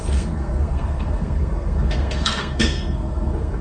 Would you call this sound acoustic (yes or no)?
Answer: no